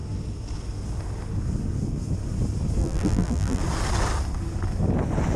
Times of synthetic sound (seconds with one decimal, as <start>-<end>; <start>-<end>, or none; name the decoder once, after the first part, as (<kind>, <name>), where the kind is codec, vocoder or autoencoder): 2.8-3.6 (vocoder, BigVGAN v2)